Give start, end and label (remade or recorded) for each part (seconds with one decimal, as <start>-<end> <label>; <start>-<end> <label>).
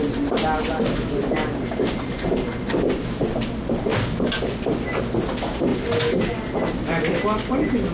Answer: 0.0-3.9 recorded; 3.9-4.5 remade; 4.5-7.9 recorded